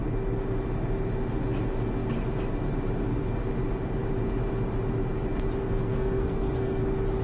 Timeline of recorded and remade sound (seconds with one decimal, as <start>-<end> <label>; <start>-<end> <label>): 0.0-5.6 recorded; 5.6-6.8 remade; 6.8-7.2 recorded